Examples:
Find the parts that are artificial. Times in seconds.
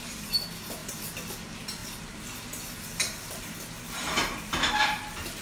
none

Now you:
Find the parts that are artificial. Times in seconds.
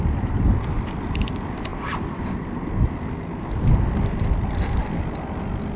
1.7-2.9 (vocoder, BigVGAN v2)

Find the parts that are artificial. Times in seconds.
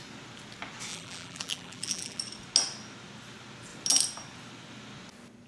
0.9-2.2 (vocoder, BigVGAN v2)